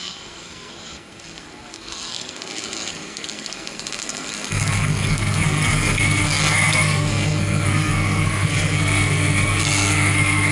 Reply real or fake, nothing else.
fake